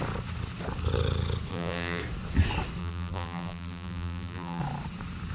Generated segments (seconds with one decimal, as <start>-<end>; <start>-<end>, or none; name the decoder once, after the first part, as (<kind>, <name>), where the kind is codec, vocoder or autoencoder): 1.5-2.0 (vocoder, BigVGAN v2); 2.8-4.6